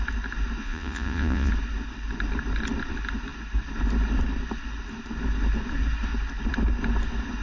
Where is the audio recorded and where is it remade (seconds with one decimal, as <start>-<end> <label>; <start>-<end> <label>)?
0.0-0.6 recorded; 0.6-1.5 remade; 1.5-7.4 recorded